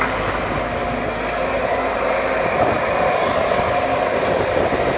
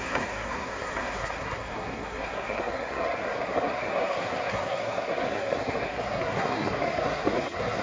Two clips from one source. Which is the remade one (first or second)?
second